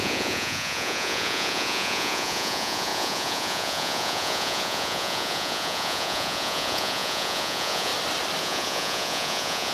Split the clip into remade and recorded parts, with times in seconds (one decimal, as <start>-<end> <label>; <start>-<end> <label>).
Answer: 0.0-7.9 remade; 7.9-8.4 recorded; 8.4-9.7 remade

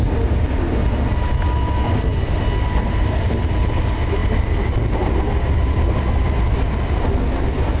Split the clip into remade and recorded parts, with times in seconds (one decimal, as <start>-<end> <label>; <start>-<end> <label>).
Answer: 0.0-7.8 recorded